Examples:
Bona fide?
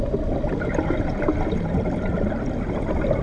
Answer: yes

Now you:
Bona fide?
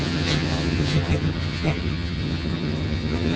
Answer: no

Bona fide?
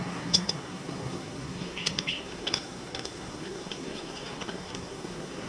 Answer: no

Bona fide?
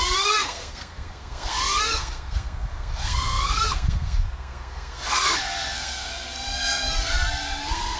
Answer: no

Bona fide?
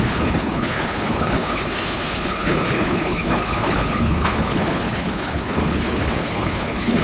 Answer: no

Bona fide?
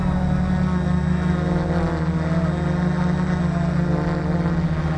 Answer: yes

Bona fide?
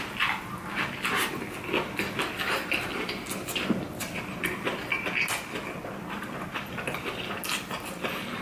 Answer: yes